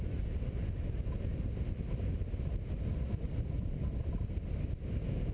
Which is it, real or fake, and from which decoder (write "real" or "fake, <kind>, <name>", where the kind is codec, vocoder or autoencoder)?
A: real